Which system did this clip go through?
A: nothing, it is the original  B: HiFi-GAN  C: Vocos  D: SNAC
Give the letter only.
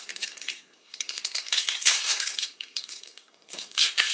D